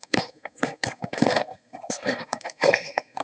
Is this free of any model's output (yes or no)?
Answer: no